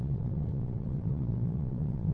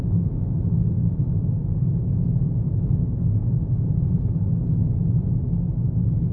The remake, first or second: first